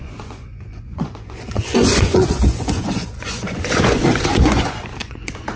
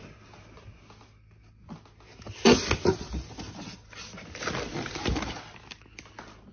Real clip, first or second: second